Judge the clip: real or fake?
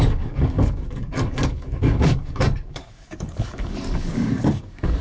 fake